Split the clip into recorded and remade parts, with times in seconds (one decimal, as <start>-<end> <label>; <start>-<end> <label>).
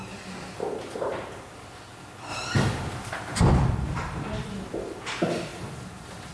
0.0-6.3 recorded